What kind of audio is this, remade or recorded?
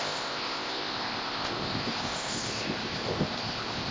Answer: remade